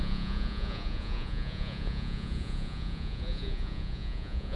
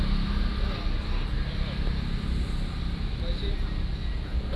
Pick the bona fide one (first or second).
second